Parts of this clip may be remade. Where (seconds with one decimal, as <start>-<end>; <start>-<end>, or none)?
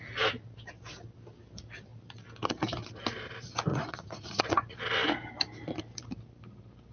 3.7-4.4